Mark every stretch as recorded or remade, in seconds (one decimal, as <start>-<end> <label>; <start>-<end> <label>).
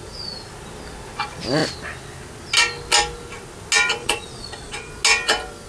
0.0-4.0 recorded; 4.0-4.9 remade; 4.9-5.7 recorded